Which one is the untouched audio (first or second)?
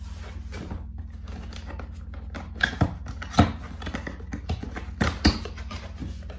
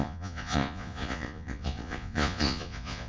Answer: first